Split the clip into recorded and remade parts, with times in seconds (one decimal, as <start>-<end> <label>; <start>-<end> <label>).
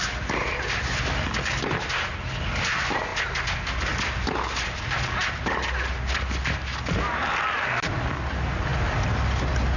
0.0-9.8 recorded